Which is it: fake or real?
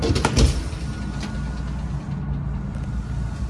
real